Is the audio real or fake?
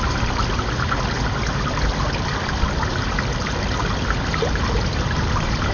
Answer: real